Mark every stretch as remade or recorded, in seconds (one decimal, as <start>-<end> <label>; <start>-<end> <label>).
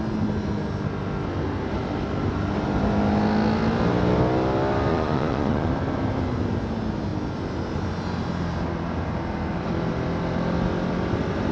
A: 0.0-4.9 recorded; 4.9-5.7 remade; 5.7-11.5 recorded